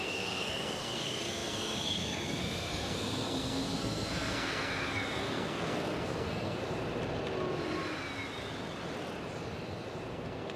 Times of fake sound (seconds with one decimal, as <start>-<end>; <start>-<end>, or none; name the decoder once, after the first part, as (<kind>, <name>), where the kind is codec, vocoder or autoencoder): 0.0-6.6 (codec, SNAC); 10.1-10.6